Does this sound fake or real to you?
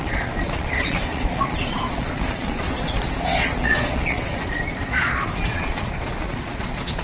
fake